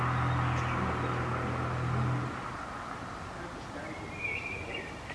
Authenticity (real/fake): real